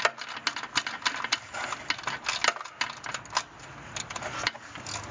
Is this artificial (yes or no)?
no